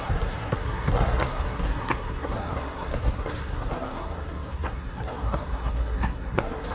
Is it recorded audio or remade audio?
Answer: remade